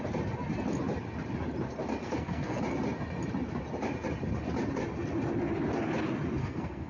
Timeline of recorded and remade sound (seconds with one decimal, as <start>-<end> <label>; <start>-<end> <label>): 0.0-2.0 recorded; 2.0-2.6 remade; 2.6-6.4 recorded; 6.4-6.9 remade